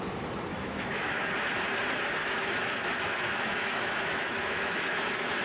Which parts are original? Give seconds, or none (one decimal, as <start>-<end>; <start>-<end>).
0.0-0.5; 1.3-2.2